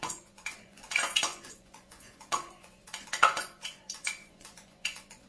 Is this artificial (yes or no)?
yes